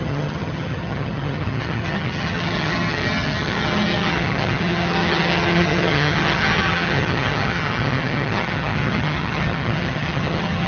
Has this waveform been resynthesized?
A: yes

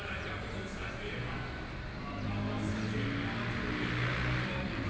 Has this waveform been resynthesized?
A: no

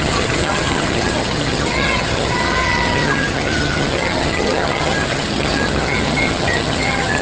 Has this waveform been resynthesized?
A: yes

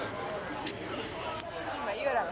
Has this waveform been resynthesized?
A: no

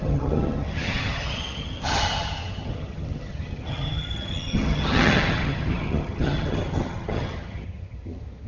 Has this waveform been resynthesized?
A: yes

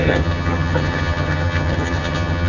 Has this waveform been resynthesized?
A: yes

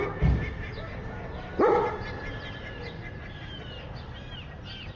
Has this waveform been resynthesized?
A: no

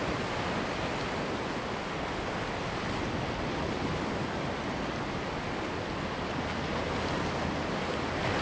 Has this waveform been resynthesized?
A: no